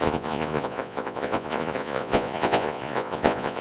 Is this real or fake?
fake